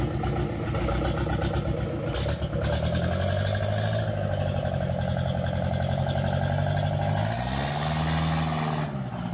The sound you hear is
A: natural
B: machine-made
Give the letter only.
A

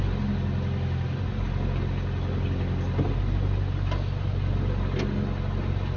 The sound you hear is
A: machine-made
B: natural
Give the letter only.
B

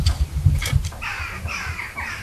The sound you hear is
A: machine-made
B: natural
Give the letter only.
A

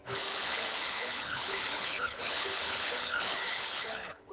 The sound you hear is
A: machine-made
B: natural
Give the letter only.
A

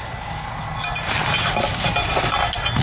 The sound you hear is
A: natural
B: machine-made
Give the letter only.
A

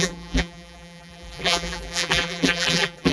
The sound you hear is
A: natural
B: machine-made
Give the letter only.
B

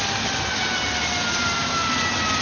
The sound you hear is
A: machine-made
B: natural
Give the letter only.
B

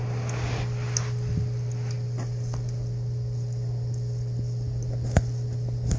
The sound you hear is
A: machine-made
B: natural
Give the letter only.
B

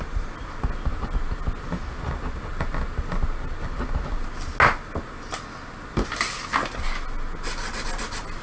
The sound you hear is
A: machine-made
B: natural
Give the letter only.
B